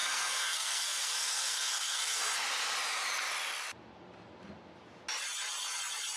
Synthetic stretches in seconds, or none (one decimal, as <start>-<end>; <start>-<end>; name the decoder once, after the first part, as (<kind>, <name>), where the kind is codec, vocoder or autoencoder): 0.0-2.2 (codec, SNAC)